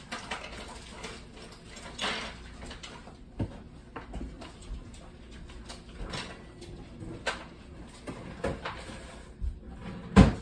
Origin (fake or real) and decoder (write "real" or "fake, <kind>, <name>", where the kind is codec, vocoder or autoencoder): real